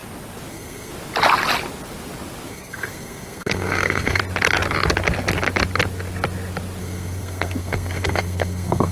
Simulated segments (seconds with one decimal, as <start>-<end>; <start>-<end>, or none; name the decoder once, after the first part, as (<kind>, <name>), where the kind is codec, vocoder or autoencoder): 0.5-0.9 (codec, SNAC); 2.5-4.2; 6.8-8.9